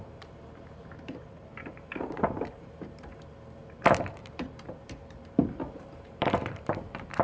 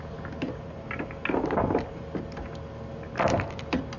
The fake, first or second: first